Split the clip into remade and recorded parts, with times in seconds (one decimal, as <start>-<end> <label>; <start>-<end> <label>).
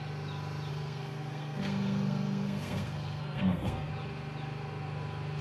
0.0-0.7 recorded; 0.7-3.9 remade; 3.9-5.4 recorded